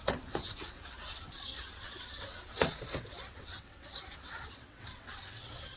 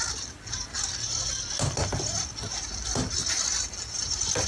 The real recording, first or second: second